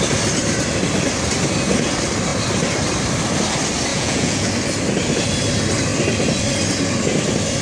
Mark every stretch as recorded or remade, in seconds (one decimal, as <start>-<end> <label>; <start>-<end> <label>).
0.0-3.9 recorded; 3.9-4.5 remade; 4.5-7.6 recorded